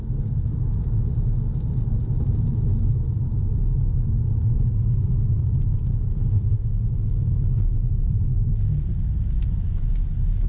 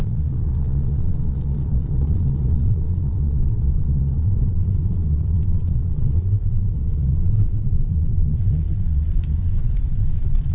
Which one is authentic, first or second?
first